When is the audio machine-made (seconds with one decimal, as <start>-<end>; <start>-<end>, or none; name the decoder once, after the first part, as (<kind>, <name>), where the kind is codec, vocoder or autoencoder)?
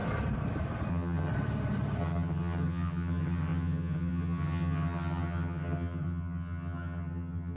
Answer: 0.9-1.3 (vocoder, HiFi-GAN); 2.0-7.6